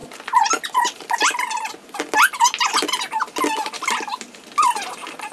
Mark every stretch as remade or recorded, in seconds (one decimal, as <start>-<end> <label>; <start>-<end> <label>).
0.0-5.3 recorded

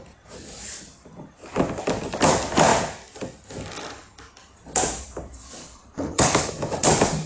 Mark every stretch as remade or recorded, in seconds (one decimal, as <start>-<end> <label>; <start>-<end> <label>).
0.0-5.6 recorded; 5.6-6.5 remade; 6.5-7.3 recorded

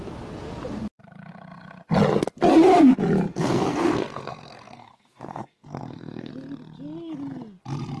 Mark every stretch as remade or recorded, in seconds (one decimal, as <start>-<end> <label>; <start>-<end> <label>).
0.0-3.3 recorded; 3.3-6.3 remade; 6.3-8.0 recorded

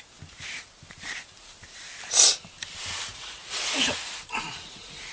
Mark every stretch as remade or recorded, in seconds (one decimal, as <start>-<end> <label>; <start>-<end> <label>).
0.0-3.1 recorded; 3.1-5.1 remade